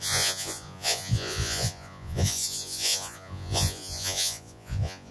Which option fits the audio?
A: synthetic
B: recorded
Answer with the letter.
A